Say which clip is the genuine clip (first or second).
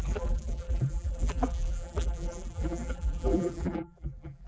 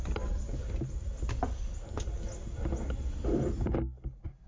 second